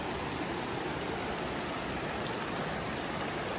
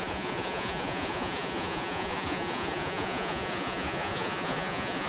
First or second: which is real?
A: first